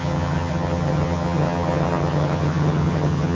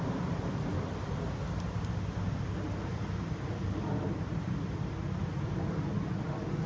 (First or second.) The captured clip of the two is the second